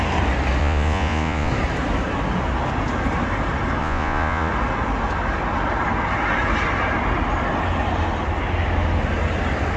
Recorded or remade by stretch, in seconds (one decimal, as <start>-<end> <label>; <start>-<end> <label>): 0.0-0.6 recorded; 0.6-1.5 remade; 1.5-3.8 recorded; 3.8-4.5 remade; 4.5-9.8 recorded